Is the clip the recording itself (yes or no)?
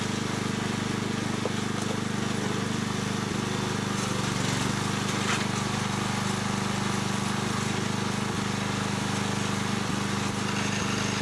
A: yes